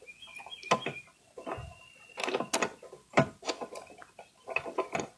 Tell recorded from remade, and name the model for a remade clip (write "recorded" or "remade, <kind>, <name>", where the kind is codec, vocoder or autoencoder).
recorded